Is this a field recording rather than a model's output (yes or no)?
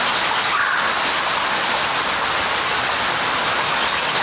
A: yes